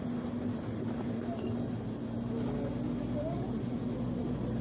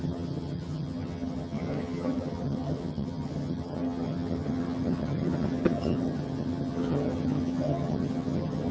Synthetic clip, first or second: second